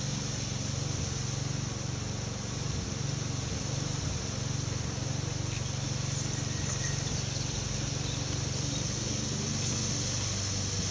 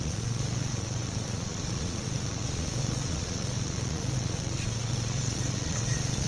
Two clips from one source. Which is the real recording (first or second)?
first